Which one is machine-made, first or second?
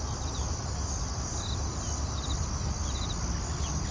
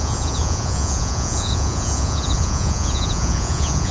second